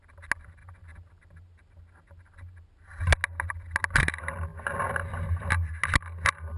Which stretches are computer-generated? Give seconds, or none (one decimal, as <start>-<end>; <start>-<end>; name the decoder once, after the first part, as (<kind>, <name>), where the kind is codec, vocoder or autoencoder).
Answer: none